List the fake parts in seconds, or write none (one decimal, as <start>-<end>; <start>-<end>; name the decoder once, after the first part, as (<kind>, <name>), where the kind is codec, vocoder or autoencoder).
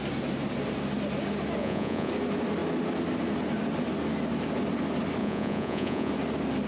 1.6-2.1 (vocoder, Vocos); 5.2-6.1